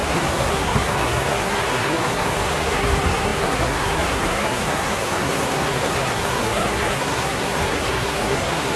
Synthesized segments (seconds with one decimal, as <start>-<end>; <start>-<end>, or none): 0.0-8.8